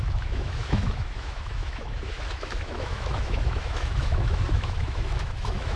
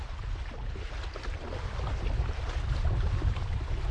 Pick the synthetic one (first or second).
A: first